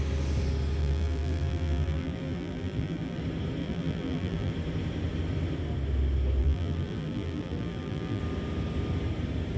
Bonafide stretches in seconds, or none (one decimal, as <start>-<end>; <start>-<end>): 0.0-0.8; 3.2-3.6; 4.5-6.4; 8.2-9.6